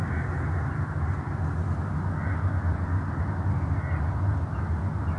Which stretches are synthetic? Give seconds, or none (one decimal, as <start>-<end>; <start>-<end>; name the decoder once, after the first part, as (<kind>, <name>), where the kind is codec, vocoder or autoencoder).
none